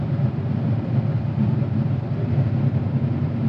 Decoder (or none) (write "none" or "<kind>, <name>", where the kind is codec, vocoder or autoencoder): vocoder, BigVGAN v2